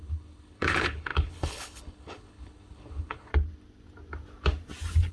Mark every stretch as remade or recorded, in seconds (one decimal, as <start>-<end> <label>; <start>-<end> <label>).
0.0-3.3 remade; 3.3-5.1 recorded